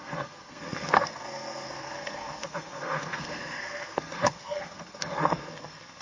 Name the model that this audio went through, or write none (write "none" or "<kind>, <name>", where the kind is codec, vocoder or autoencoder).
codec, SNAC